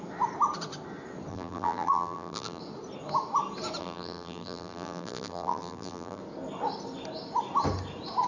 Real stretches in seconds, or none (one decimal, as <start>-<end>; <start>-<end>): 0.0-1.3; 2.6-3.8; 6.2-8.3